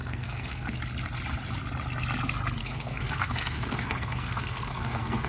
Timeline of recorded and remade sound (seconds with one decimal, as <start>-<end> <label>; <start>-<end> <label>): 0.0-0.8 remade; 0.8-2.6 recorded; 2.6-5.3 remade